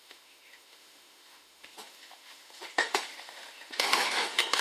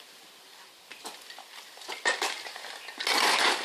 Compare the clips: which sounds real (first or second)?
second